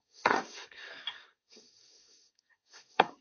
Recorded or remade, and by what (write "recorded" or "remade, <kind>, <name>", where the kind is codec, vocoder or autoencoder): remade, codec, SNAC